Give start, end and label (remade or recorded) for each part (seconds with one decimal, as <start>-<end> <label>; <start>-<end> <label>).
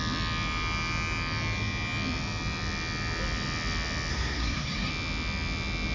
0.0-4.1 recorded; 4.1-4.9 remade; 4.9-5.9 recorded